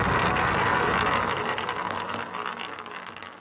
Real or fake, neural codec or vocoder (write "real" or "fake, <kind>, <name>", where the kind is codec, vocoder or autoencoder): real